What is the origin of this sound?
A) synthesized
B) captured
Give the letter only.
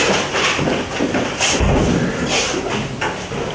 B